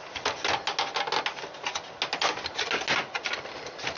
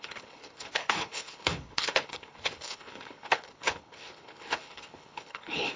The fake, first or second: second